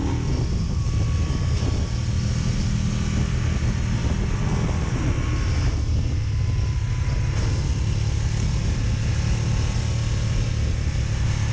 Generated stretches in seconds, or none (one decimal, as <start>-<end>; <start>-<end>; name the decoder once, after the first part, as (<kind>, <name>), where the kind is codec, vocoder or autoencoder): none